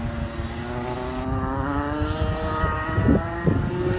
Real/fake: real